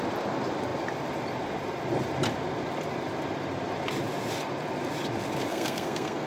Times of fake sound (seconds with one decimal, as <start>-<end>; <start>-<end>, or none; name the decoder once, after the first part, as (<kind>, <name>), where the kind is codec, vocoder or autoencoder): 5.5-6.3 (codec, SNAC)